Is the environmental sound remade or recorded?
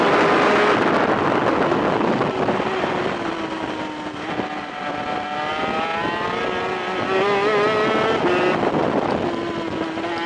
recorded